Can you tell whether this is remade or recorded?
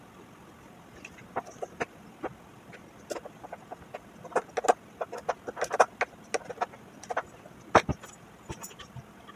recorded